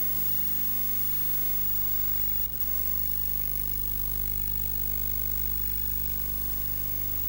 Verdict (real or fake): real